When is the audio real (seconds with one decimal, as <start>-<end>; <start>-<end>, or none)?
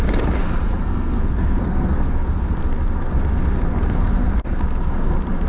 0.0-0.8; 2.5-3.3; 5.1-5.5